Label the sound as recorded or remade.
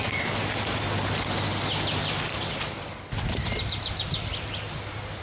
recorded